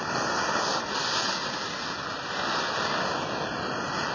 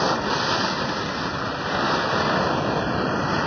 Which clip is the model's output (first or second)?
second